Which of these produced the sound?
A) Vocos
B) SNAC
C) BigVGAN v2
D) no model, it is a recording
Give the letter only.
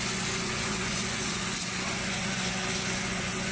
A